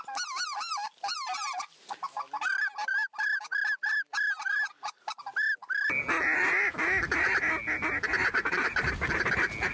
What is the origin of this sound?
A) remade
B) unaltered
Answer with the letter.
B